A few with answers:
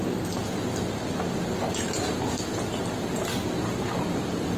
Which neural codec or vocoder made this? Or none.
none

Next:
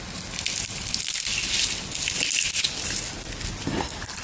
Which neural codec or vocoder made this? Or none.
none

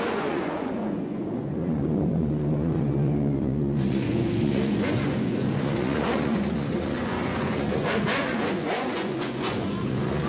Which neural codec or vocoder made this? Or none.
vocoder, Vocos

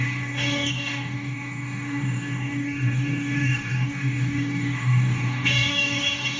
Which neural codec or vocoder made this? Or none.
codec, DAC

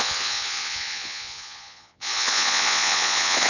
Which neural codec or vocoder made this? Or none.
vocoder, Vocos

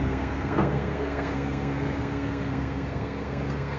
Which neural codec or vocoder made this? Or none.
codec, SNAC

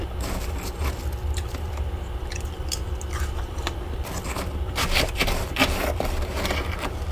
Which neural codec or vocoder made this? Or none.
vocoder, BigVGAN v2